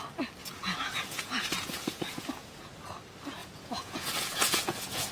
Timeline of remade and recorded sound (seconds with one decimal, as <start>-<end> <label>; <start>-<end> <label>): 0.0-0.4 recorded; 0.4-2.8 remade; 2.8-3.4 recorded; 3.4-5.1 remade